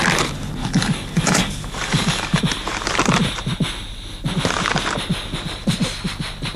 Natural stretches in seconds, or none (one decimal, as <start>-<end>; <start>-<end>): 0.0-0.6; 2.4-6.6